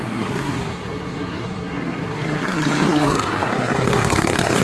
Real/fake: fake